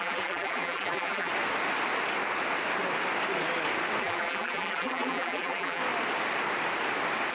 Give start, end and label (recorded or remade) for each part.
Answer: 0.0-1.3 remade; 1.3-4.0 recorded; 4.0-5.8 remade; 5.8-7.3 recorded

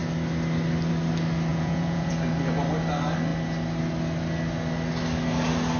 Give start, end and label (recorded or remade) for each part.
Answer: 0.0-1.5 recorded; 1.5-2.1 remade; 2.1-5.8 recorded